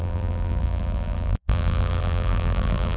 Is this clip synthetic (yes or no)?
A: yes